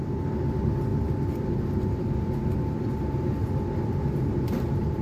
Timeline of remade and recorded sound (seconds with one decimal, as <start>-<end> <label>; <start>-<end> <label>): 0.0-5.0 recorded